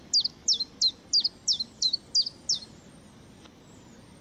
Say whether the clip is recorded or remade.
recorded